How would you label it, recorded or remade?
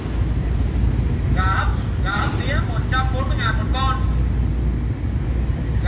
recorded